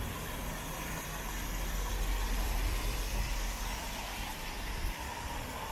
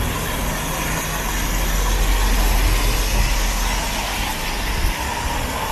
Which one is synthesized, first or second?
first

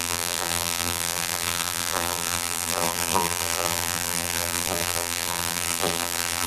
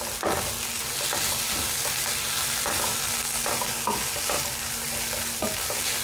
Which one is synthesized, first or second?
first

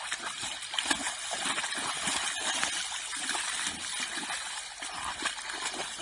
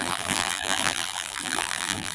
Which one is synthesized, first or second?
second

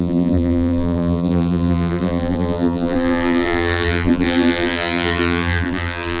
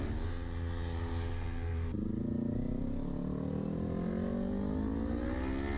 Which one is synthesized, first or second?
first